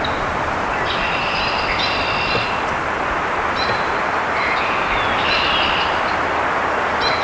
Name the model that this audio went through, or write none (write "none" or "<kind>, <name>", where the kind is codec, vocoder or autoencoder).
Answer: none